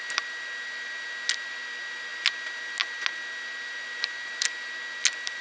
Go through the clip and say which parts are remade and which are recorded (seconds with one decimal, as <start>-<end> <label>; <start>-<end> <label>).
0.0-5.4 recorded